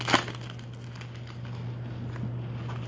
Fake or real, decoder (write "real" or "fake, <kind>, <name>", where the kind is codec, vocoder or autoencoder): real